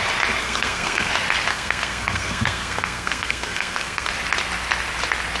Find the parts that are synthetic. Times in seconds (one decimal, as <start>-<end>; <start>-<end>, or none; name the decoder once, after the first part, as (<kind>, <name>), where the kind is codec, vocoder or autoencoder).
0.4-1.1 (codec, SNAC); 1.5-4.1